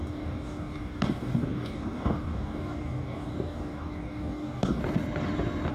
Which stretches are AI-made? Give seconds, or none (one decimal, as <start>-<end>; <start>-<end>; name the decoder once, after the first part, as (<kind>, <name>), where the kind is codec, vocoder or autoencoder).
0.0-4.8 (codec, DAC)

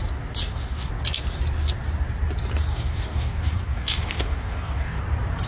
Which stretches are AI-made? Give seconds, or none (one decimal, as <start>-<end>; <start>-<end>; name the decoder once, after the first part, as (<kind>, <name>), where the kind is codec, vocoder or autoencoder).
0.4-0.9 (codec, DAC); 2.7-5.0

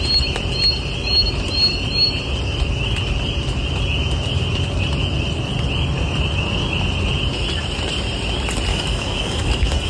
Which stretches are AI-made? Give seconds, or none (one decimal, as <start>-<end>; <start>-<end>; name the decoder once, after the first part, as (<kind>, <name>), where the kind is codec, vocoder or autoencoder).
8.7-9.9 (codec, DAC)

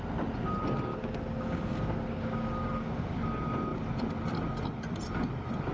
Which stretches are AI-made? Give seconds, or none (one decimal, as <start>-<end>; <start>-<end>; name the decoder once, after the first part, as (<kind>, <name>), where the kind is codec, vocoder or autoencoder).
0.9-3.2 (codec, DAC)

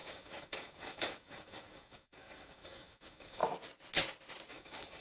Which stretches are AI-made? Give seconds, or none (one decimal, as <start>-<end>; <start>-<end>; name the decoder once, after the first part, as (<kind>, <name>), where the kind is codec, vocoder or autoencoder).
0.0-3.4 (codec, DAC); 4.5-5.0

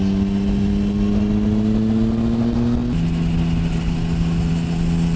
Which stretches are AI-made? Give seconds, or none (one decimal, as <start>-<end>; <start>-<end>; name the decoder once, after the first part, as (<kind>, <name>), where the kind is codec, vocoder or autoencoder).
none

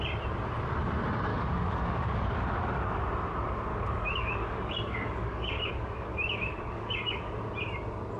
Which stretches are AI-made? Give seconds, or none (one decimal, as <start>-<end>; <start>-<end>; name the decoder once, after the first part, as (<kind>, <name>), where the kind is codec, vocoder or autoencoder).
1.3-3.0 (codec, DAC); 3.7-7.3

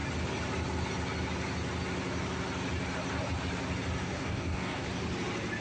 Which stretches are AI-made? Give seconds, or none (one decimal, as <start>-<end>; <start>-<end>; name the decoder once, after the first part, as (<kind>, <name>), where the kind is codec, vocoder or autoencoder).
4.0-4.9 (codec, DAC)